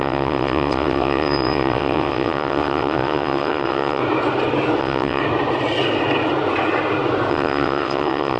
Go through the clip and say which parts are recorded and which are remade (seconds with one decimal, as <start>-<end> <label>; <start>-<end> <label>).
0.0-4.0 remade; 4.0-4.8 recorded; 4.8-5.2 remade; 5.2-7.3 recorded; 7.3-8.4 remade